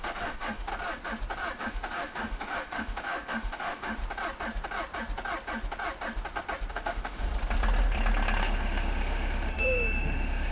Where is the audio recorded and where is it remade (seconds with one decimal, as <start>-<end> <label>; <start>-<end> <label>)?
0.0-0.7 remade; 0.7-1.6 recorded; 1.6-4.0 remade; 4.0-6.7 recorded; 6.7-7.3 remade; 7.3-8.4 recorded; 8.4-10.5 remade

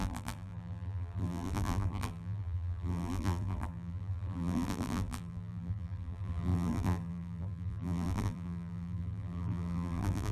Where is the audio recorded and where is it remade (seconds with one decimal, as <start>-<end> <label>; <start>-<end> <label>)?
0.0-10.3 remade

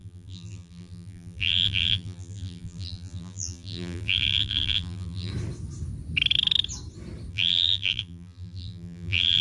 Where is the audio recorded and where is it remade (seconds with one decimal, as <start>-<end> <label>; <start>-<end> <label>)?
0.0-5.3 remade; 5.3-7.3 recorded; 7.3-9.4 remade

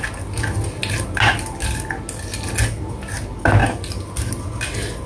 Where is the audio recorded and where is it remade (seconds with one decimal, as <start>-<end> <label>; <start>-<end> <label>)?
0.0-5.1 recorded